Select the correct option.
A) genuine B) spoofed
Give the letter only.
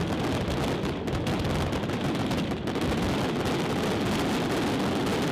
A